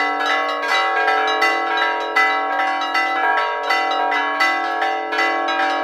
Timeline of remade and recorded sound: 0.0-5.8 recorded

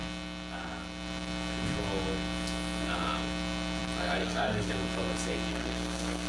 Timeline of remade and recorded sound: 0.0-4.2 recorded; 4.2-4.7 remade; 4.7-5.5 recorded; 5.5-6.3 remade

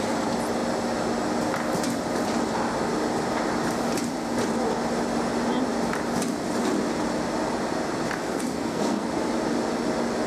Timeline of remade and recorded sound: 0.0-8.2 recorded; 8.2-9.1 remade; 9.1-10.3 recorded

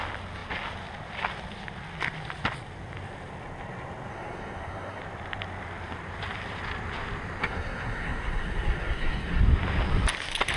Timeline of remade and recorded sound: 0.0-4.1 recorded; 4.1-5.0 remade; 5.0-7.4 recorded; 7.4-9.4 remade; 9.4-10.6 recorded

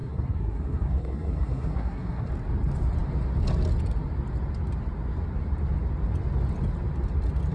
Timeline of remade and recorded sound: 0.0-2.3 remade; 2.3-7.5 recorded

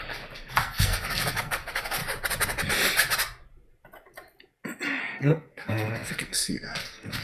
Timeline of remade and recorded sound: 0.0-2.0 remade; 2.0-5.0 recorded; 5.0-7.2 remade